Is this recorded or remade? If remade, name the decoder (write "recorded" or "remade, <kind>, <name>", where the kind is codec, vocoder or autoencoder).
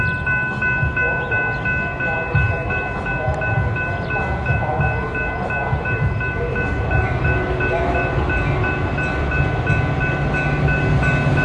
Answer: recorded